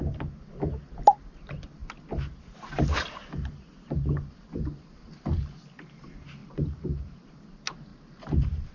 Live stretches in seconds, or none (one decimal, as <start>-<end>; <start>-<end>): 0.0-6.4; 7.3-7.9

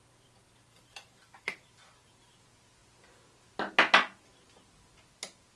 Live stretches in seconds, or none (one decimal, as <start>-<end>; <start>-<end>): 0.0-0.7; 2.2-5.6

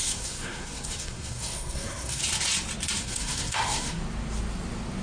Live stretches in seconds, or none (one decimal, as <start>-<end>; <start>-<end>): 2.2-3.0; 4.0-5.0

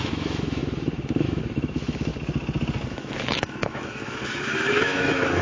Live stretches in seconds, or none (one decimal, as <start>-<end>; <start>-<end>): 2.1-2.9

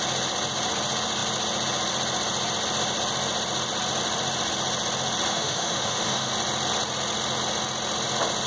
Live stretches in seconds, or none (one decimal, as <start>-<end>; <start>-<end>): 0.0-5.3; 6.3-8.5

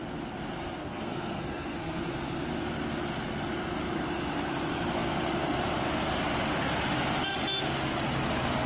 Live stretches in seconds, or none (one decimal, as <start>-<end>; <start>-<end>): 0.0-0.8; 2.0-8.7

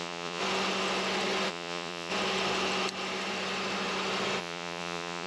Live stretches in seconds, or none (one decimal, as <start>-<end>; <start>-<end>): 0.4-1.5; 2.1-4.4